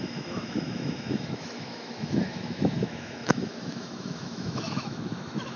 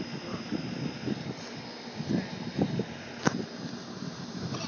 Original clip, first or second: second